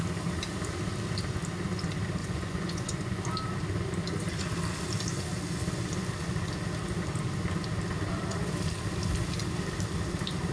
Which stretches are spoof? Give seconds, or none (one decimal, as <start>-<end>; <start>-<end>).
2.2-3.2

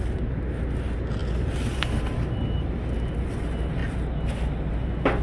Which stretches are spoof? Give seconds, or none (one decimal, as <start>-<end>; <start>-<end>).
none